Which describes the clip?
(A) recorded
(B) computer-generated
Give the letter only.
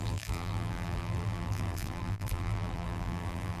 B